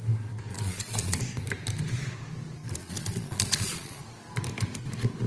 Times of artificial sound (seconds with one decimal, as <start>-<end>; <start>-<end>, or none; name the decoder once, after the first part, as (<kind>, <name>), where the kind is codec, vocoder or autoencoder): 0.5-1.2 (vocoder, Vocos); 2.8-4.0